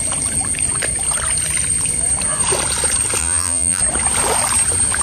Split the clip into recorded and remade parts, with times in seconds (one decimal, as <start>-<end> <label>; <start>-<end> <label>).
0.0-3.2 recorded; 3.2-3.8 remade; 3.8-5.0 recorded